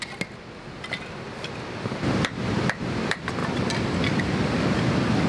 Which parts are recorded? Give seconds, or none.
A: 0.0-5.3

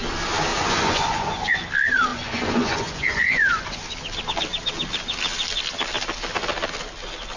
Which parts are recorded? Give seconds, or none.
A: 0.0-0.5; 1.4-2.1; 3.8-7.4